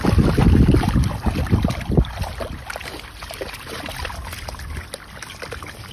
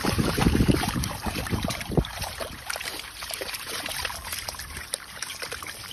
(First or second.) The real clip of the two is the first